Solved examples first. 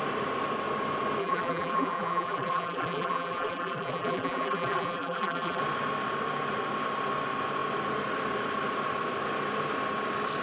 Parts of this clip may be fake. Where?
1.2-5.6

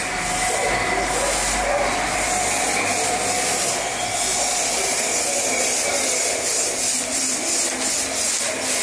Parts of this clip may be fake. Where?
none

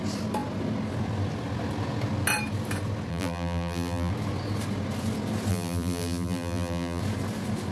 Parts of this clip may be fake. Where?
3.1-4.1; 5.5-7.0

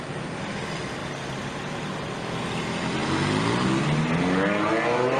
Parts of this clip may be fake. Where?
none